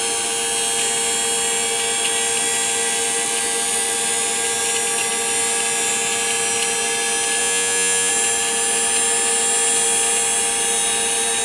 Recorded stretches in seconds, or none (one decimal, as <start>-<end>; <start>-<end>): 0.0-7.4; 8.1-11.4